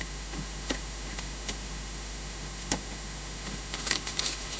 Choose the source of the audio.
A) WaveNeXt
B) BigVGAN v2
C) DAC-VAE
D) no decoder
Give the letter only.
C